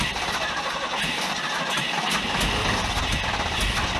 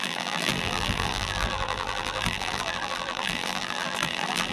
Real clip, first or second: first